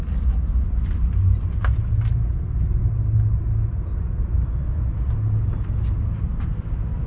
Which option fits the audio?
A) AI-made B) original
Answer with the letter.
B